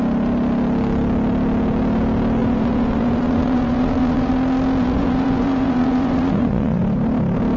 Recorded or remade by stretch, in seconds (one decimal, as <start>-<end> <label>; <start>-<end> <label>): 0.0-2.4 recorded; 2.4-4.3 remade; 4.3-4.8 recorded; 4.8-6.8 remade; 6.8-7.6 recorded